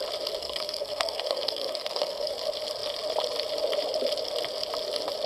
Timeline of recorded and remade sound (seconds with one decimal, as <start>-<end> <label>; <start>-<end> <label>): 0.0-0.4 recorded; 0.4-2.3 remade; 2.3-5.3 recorded